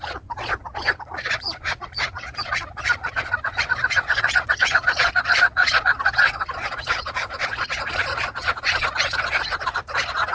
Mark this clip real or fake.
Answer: fake